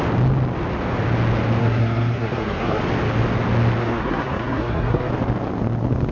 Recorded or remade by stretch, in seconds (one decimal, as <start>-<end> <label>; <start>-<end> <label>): 0.0-1.6 recorded; 1.6-2.8 remade; 2.8-3.8 recorded; 3.8-5.1 remade; 5.1-6.1 recorded